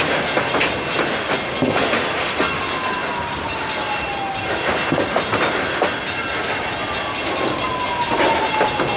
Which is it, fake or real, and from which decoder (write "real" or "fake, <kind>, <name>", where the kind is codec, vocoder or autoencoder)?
real